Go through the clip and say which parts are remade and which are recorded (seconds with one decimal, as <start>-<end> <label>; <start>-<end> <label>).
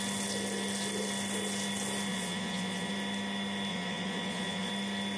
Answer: 0.0-2.1 recorded; 2.1-2.9 remade; 2.9-3.7 recorded; 3.7-4.7 remade; 4.7-5.2 recorded